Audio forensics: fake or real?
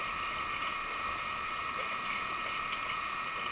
real